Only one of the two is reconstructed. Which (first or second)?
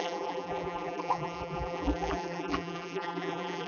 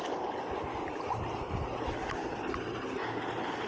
first